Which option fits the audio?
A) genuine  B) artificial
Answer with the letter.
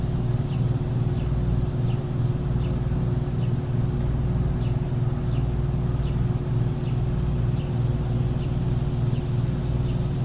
A